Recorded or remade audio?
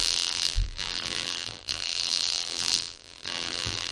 remade